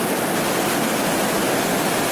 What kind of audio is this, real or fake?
real